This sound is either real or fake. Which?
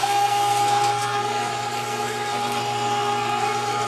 fake